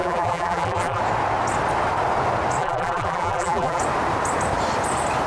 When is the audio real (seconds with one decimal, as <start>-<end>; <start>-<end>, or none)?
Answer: 1.0-2.6; 3.8-5.3